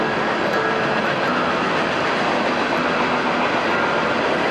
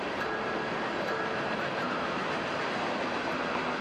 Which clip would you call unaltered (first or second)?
first